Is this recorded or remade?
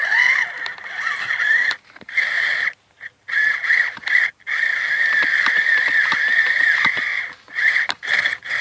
recorded